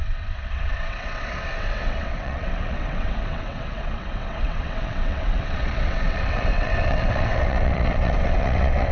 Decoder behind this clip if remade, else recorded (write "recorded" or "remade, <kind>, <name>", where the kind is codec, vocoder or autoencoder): remade, vocoder, WaveNeXt